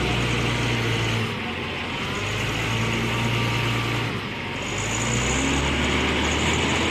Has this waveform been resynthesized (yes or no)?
no